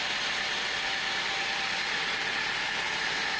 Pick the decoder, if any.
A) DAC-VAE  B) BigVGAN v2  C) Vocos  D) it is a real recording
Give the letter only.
D